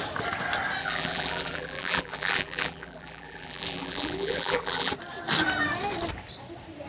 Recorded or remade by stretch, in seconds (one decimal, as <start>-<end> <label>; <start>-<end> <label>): 0.0-0.8 recorded; 0.8-4.9 remade; 4.9-6.9 recorded